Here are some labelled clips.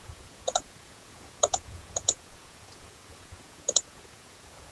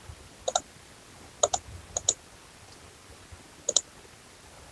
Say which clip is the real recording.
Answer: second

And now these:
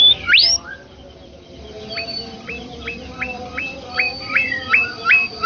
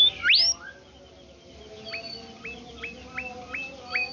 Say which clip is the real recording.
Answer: second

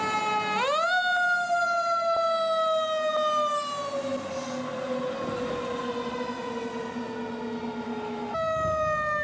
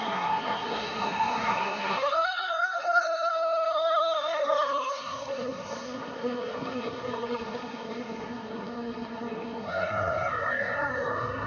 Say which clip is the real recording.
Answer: first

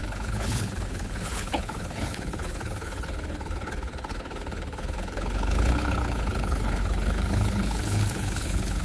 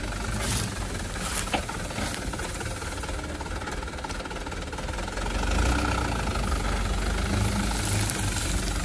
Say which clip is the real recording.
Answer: second